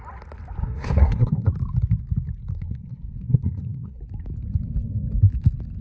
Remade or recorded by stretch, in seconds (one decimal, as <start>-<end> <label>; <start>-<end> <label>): 0.0-0.6 recorded; 0.6-1.5 remade; 1.5-2.5 recorded; 2.5-4.0 remade; 4.0-5.8 recorded